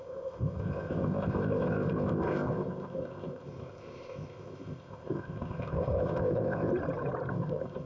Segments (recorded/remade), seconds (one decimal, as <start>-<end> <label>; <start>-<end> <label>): 0.0-6.7 remade; 6.7-7.3 recorded; 7.3-7.9 remade